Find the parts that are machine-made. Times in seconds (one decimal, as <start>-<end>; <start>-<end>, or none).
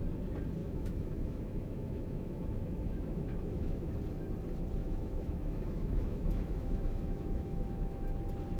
0.6-3.9; 4.8-8.0